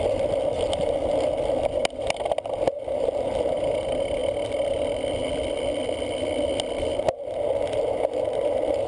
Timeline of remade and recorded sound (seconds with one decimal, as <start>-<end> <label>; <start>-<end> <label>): 0.0-8.9 recorded